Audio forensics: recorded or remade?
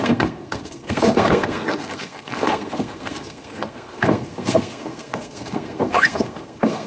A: remade